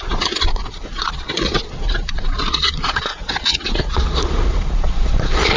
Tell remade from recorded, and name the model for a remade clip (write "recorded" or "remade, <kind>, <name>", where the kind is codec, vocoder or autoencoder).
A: remade, vocoder, Vocos